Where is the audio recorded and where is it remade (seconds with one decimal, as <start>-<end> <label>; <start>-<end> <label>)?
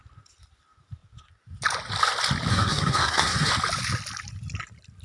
0.0-2.5 recorded; 2.5-3.5 remade; 3.5-5.0 recorded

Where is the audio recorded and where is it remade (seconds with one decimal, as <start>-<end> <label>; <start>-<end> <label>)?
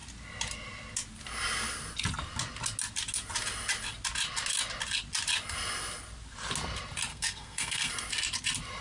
0.0-7.1 recorded; 7.1-7.9 remade; 7.9-8.8 recorded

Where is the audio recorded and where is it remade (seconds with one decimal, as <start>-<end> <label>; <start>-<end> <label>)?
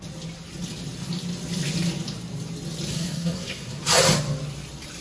0.0-2.9 recorded; 2.9-3.8 remade; 3.8-5.0 recorded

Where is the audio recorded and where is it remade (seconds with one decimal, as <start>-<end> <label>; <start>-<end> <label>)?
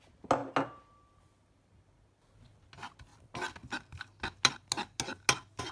0.0-5.7 recorded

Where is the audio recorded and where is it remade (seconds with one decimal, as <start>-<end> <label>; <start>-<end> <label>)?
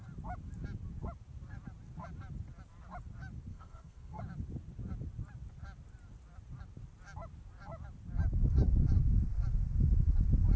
0.0-3.5 recorded; 3.5-4.2 remade; 4.2-10.6 recorded